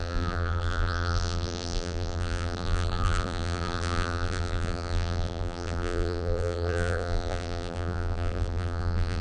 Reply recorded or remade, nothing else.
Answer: remade